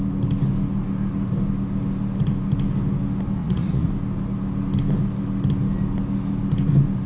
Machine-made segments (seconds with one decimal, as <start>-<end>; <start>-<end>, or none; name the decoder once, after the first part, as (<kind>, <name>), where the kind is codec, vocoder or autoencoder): 3.4-3.9 (vocoder, Vocos)